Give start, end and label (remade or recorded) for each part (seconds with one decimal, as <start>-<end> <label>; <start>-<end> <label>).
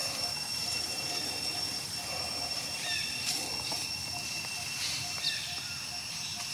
0.0-6.5 recorded